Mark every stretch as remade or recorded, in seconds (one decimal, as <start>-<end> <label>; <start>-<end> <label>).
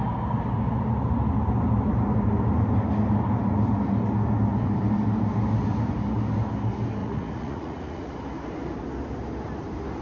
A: 0.0-7.0 recorded; 7.0-8.1 remade; 8.1-10.0 recorded